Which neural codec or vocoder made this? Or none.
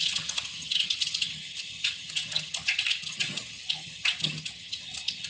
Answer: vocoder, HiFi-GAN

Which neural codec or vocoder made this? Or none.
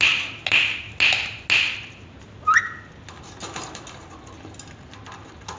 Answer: none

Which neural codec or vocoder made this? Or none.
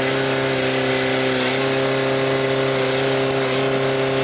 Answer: none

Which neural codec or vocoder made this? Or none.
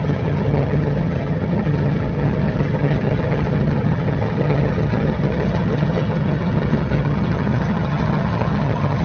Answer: vocoder, HiFi-GAN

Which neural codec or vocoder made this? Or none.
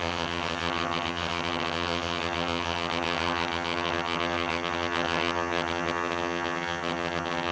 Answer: vocoder, HiFi-GAN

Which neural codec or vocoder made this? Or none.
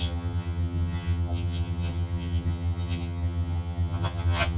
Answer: vocoder, HiFi-GAN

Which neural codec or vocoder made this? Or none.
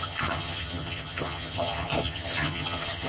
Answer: vocoder, HiFi-GAN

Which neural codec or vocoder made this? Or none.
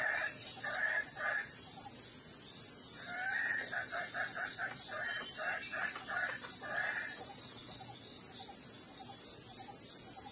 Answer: none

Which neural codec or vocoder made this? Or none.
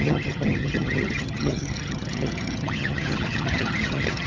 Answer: vocoder, HiFi-GAN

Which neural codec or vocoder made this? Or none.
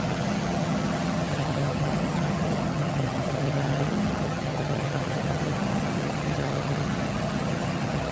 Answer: vocoder, HiFi-GAN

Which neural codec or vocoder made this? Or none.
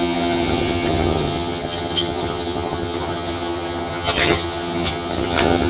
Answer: vocoder, HiFi-GAN